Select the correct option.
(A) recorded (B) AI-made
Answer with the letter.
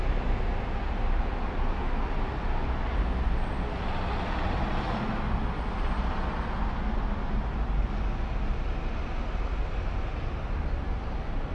A